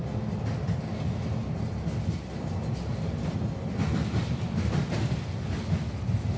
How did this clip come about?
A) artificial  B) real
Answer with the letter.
B